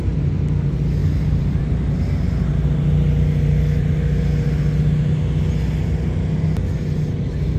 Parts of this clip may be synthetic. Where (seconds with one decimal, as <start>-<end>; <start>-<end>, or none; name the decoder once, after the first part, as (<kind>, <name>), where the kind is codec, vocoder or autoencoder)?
1.0-1.6 (vocoder, BigVGAN v2)